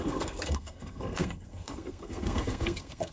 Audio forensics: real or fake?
fake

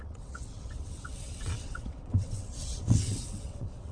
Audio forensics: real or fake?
fake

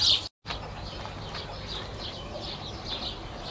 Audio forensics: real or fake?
real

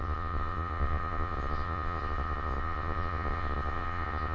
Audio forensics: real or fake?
fake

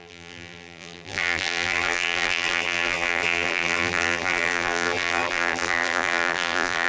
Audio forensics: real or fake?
fake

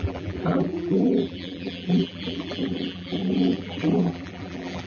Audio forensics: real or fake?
fake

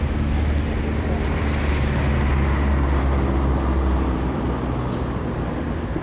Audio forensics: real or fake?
real